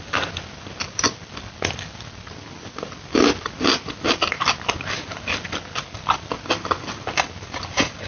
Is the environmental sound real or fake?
real